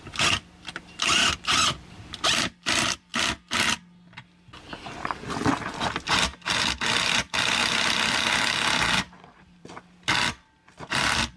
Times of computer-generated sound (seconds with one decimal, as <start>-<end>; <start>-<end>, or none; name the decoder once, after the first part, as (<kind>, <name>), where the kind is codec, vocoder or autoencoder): 0.0-3.1 (vocoder, BigVGAN v2); 7.1-7.6; 8.9-11.4

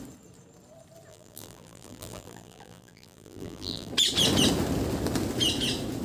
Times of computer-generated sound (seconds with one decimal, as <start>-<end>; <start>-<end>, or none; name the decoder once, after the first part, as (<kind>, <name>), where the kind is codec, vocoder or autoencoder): 1.1-3.9 (vocoder, BigVGAN v2)

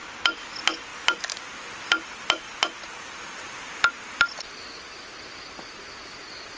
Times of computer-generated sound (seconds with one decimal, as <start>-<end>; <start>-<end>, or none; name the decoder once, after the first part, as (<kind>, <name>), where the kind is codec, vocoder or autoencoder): none

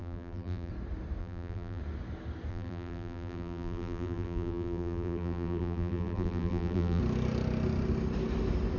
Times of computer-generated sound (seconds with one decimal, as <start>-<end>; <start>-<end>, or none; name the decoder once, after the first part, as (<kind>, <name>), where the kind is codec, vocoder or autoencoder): 0.0-0.7 (vocoder, BigVGAN v2); 1.2-1.8; 2.5-7.0

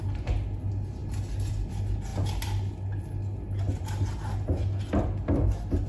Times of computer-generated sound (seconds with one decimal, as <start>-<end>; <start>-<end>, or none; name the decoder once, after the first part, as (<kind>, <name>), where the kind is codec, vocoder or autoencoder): none